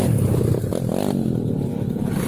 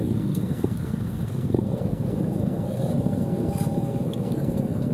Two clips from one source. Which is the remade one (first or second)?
second